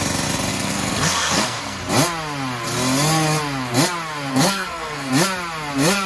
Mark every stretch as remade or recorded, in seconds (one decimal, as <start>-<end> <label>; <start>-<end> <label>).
0.0-0.5 recorded; 0.5-1.8 remade; 1.8-4.3 recorded; 4.3-5.1 remade; 5.1-6.1 recorded